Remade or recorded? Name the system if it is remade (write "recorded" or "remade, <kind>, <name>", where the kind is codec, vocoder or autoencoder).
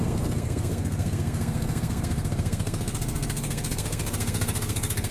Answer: remade, codec, SNAC